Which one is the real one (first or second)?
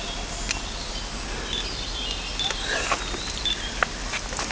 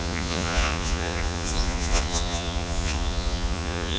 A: first